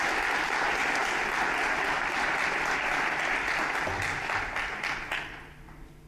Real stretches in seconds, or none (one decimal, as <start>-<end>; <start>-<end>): 0.0-6.1